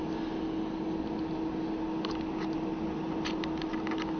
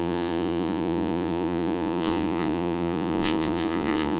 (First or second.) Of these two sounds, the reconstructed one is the second